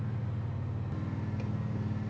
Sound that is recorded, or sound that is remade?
recorded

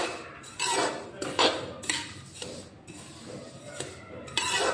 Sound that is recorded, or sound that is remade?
recorded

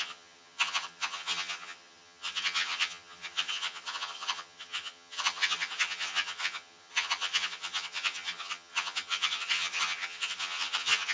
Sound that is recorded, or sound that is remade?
remade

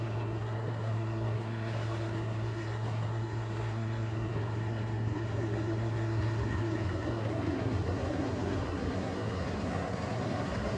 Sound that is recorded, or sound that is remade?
remade